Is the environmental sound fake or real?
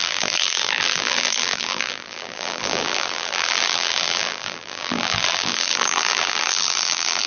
fake